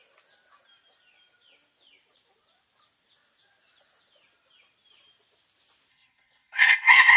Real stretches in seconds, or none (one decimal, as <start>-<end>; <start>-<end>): 0.0-5.9